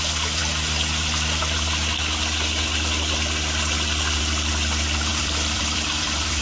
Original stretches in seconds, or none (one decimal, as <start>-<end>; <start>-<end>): 0.0-5.1